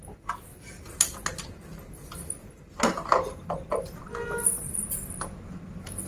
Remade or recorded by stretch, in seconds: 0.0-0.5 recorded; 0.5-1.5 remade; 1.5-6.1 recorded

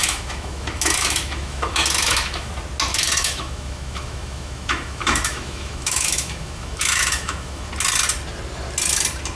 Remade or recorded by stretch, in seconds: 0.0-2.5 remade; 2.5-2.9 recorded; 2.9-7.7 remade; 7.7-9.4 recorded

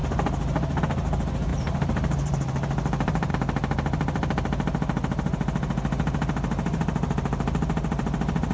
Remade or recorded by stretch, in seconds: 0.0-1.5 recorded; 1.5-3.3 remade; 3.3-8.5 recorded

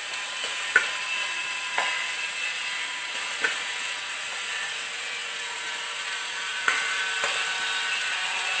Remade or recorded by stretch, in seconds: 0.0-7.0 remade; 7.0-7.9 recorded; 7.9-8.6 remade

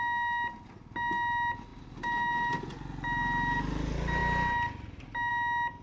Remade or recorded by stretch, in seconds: 0.0-5.8 recorded

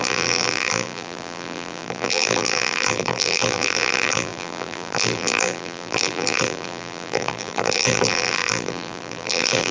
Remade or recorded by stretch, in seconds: 0.0-9.7 remade